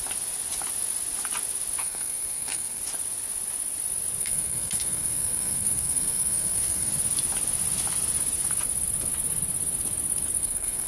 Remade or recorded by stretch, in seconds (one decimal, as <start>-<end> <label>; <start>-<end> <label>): 0.0-1.8 recorded; 1.8-2.8 remade; 2.8-4.2 recorded; 4.2-6.9 remade; 6.9-10.4 recorded; 10.4-10.9 remade

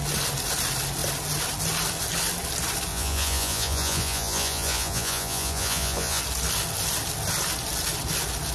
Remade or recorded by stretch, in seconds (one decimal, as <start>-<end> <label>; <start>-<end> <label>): 0.0-2.9 recorded; 2.9-6.2 remade; 6.2-8.5 recorded

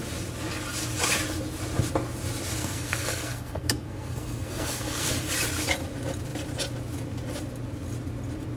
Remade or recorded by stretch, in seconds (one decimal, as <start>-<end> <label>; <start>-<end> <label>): 0.0-2.6 recorded; 2.6-5.1 remade; 5.1-8.6 recorded